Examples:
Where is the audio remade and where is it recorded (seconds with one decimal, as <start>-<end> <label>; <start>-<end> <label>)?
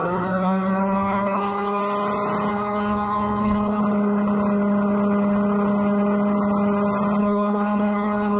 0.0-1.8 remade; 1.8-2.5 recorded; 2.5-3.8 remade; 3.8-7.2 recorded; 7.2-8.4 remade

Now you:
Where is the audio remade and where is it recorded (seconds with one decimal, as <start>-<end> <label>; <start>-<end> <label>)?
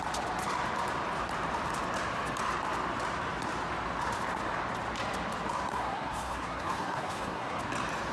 0.0-5.7 recorded; 5.7-7.6 remade; 7.6-8.1 recorded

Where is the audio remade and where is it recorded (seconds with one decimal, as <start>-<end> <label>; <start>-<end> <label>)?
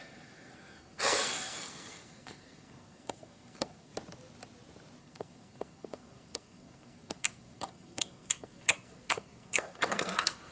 0.0-3.9 remade; 3.9-5.0 recorded; 5.0-10.5 remade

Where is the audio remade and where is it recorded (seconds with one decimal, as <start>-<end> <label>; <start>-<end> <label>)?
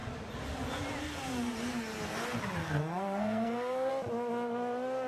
0.0-2.6 recorded; 2.6-3.9 remade; 3.9-5.1 recorded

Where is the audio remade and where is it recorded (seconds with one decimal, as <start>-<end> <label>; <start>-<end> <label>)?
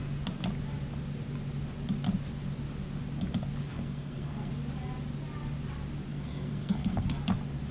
0.0-3.7 recorded; 3.7-4.5 remade; 4.5-6.1 recorded; 6.1-7.2 remade; 7.2-7.7 recorded